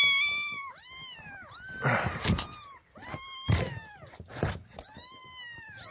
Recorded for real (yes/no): yes